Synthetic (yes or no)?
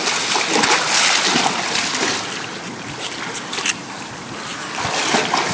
no